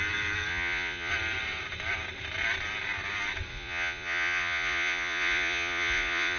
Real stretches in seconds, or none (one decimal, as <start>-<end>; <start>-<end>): 0.0-0.5; 1.1-3.5